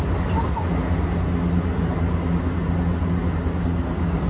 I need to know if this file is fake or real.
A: real